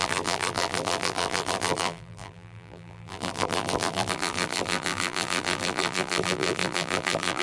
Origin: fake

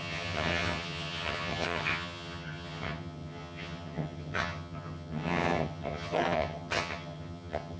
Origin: fake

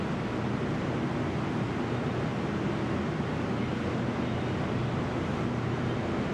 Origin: real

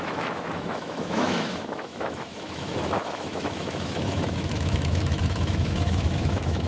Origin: fake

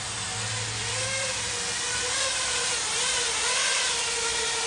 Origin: real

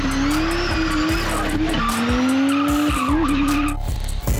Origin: real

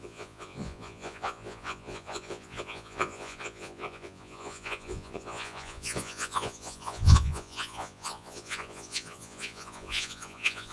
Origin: fake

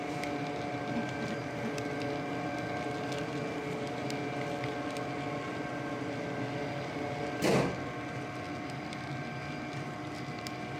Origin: real